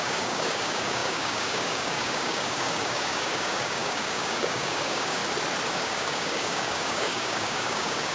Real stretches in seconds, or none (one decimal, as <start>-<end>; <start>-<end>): 5.2-5.7